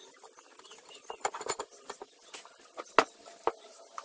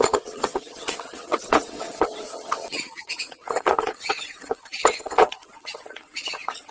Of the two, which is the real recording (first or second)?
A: first